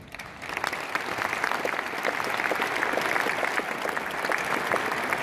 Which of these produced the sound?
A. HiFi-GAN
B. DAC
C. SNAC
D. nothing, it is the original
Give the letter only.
D